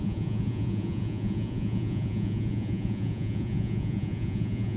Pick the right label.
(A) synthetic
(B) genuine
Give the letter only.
A